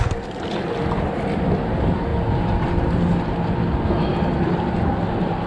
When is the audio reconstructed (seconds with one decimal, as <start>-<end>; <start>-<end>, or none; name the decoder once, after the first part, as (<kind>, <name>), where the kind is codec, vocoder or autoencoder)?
4.1-4.9 (vocoder, BigVGAN v2)